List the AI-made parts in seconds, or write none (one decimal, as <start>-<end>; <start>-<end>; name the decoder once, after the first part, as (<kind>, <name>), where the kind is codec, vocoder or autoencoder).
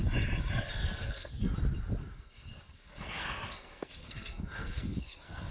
0.7-1.5 (codec, SNAC); 2.0-5.5